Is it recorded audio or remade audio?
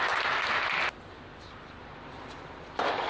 recorded